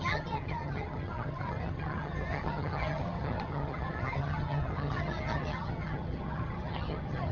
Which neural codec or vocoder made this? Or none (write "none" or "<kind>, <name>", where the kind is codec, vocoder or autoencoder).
vocoder, HiFi-GAN